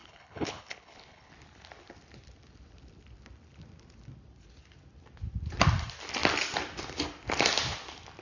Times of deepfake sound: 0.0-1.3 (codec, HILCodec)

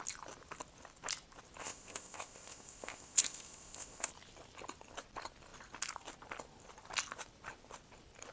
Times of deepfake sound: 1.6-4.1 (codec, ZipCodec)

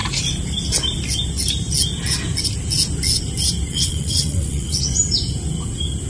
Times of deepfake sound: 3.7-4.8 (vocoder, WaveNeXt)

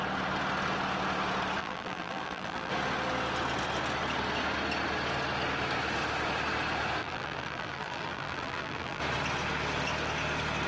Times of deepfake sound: 1.6-2.7 (vocoder, BigVGAN v2); 7.0-9.0

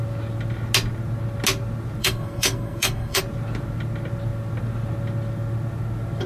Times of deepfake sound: 2.0-3.2 (codec, SNAC)